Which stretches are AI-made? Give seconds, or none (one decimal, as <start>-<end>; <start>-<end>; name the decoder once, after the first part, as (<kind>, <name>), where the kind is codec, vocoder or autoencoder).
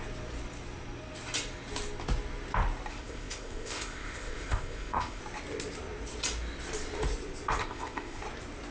2.9-5.2 (codec, ZipCodec); 7.6-8.2